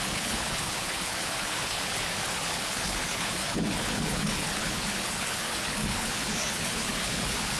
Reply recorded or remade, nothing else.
remade